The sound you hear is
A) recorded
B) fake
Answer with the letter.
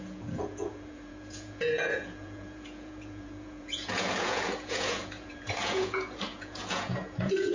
B